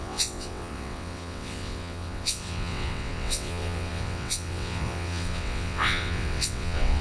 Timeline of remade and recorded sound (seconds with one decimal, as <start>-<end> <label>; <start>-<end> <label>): 0.0-7.0 remade